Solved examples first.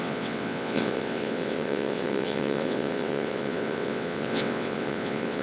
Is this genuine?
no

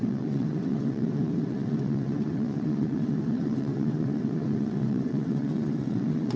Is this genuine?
no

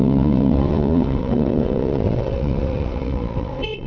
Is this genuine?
no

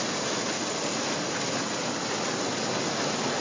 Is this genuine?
yes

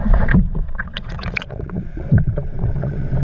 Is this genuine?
no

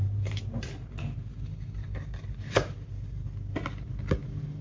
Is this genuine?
yes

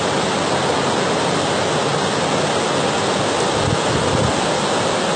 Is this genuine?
yes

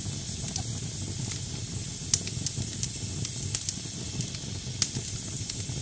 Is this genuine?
yes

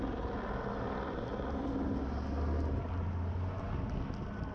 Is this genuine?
yes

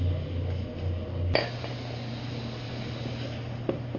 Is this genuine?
yes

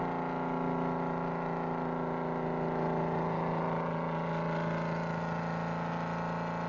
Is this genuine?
yes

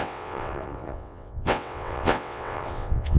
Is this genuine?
no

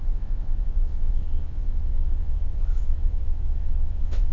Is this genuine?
no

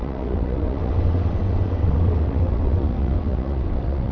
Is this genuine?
no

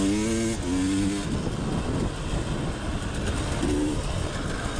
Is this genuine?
yes